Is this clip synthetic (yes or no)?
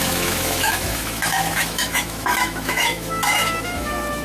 yes